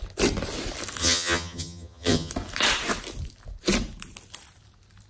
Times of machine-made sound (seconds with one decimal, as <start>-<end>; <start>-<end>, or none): 1.0-2.3